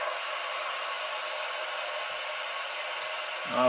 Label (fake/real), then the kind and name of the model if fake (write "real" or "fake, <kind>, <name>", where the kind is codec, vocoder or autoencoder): real